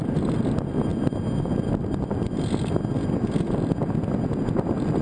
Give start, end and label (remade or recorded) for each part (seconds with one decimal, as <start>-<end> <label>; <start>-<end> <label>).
0.0-5.0 recorded